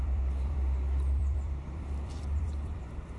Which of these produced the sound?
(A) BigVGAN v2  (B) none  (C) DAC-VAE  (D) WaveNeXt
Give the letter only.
A